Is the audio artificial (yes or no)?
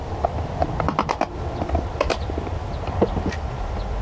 no